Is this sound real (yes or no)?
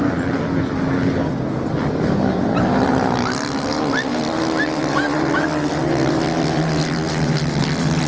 yes